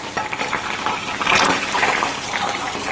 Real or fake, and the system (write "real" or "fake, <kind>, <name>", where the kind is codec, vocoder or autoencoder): fake, vocoder, BigVGAN v2